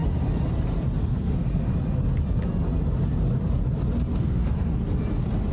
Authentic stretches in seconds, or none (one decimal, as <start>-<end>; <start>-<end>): 0.0-1.0; 1.7-4.2; 4.7-5.5